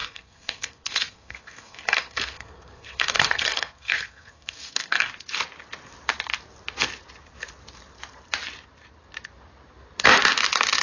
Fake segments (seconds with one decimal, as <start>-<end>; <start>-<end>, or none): 0.0-5.1